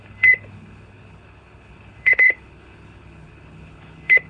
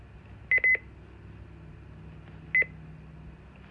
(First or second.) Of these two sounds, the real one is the second